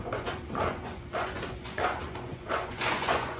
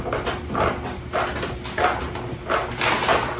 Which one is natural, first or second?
second